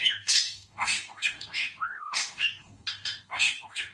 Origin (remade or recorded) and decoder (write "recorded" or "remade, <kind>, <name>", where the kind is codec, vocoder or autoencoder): remade, codec, DAC